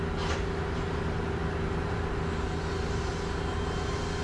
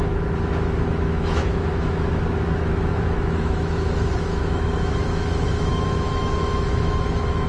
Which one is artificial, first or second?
second